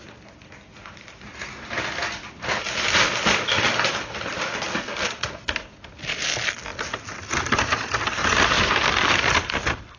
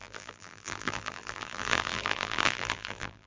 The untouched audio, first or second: first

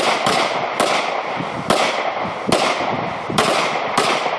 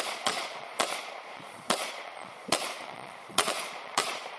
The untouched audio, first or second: first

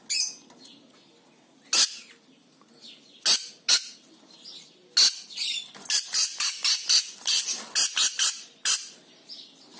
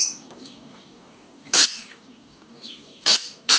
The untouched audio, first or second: first